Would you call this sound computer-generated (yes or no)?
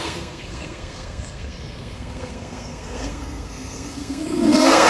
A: yes